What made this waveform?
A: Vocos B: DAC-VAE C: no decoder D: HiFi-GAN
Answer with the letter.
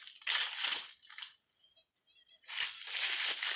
C